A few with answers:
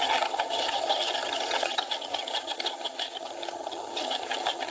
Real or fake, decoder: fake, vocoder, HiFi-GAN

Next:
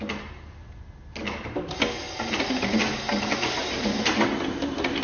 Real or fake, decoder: real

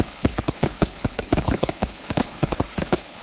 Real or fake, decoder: fake, codec, HILCodec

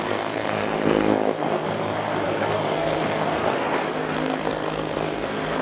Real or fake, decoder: fake, codec, SNAC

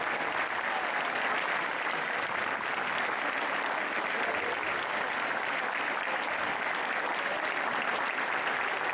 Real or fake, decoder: real